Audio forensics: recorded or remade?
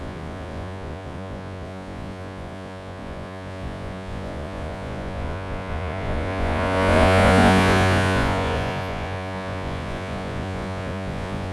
remade